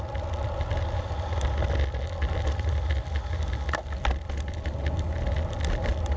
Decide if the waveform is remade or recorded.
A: recorded